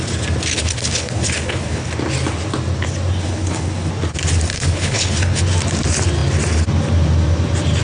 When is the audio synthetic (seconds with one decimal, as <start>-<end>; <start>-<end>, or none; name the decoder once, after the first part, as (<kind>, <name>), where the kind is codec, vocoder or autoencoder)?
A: 0.5-1.9 (codec, HILCodec); 3.2-3.9; 4.5-5.4